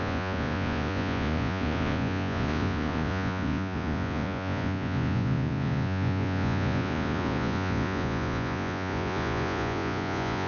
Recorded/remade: remade